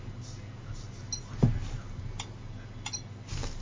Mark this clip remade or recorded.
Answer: recorded